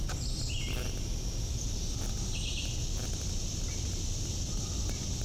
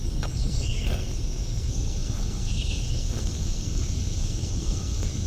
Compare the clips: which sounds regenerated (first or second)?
second